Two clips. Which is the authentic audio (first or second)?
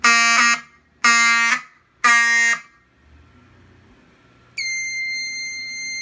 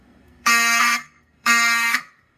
first